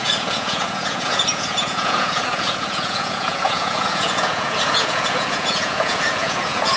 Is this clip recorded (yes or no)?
no